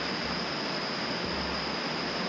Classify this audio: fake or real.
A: real